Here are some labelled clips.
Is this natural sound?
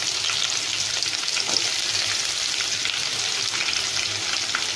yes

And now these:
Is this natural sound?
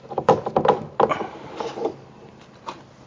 yes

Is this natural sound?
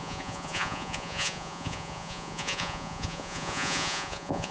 no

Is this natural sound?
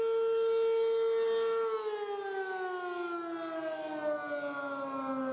yes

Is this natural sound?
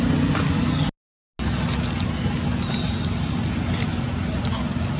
yes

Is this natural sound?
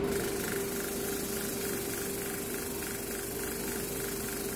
yes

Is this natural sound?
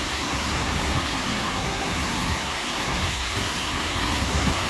no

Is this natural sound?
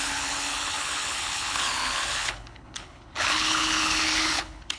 no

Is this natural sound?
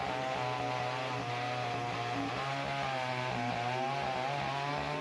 yes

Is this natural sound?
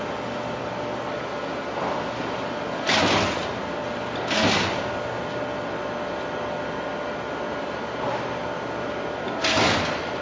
yes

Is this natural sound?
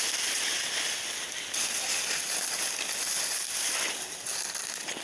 yes